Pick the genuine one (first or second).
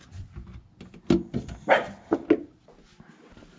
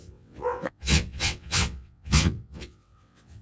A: first